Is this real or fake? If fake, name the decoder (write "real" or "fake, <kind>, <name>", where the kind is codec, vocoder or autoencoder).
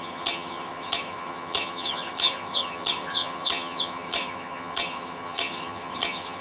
fake, vocoder, HiFi-GAN